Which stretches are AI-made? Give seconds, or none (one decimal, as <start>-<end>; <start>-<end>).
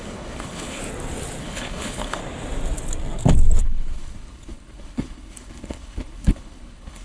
0.0-0.8; 1.4-2.2; 3.6-7.0